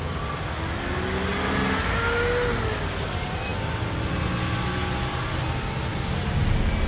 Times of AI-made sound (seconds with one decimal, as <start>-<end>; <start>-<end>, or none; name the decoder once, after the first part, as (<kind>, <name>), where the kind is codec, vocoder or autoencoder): none